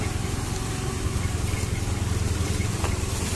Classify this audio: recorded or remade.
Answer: recorded